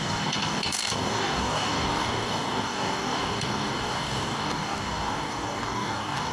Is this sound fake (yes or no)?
yes